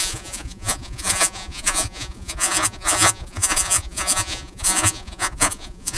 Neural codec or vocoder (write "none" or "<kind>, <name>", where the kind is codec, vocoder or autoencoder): vocoder, Vocos